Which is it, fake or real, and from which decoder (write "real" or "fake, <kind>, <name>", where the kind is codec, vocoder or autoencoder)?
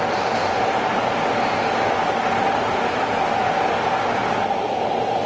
real